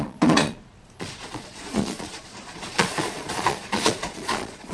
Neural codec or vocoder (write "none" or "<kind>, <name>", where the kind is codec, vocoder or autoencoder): vocoder, Vocos